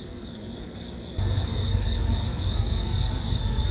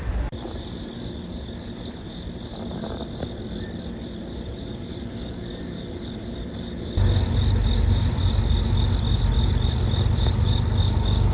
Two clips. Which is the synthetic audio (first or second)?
first